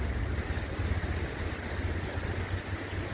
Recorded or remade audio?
recorded